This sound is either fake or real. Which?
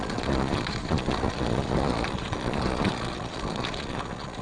fake